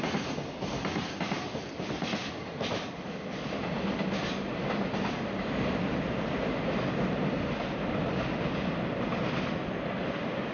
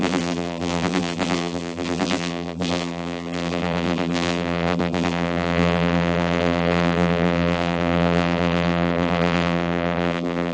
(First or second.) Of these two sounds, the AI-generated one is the second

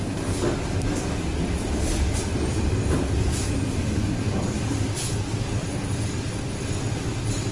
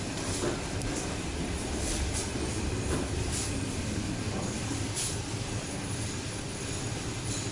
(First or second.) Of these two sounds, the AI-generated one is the second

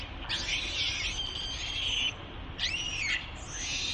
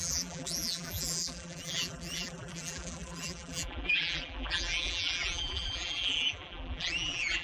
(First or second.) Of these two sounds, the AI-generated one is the second